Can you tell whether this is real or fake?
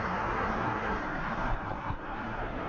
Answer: fake